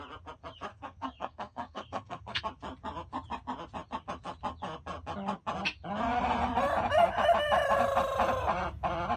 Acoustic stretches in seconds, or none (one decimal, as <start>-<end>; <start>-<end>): 0.0-0.7; 2.4-9.2